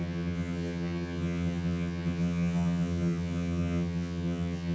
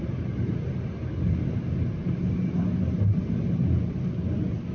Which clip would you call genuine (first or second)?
second